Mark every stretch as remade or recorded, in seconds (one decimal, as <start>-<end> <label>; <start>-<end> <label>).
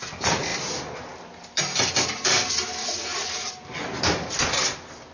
0.0-2.8 recorded; 2.8-3.5 remade; 3.5-5.1 recorded